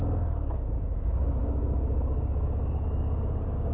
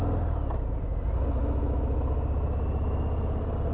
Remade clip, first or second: first